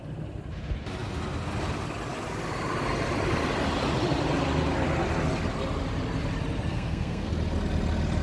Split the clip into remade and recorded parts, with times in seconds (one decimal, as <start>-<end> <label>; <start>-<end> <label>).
0.0-6.7 recorded; 6.7-7.3 remade; 7.3-8.2 recorded